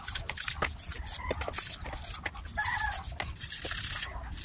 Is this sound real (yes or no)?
yes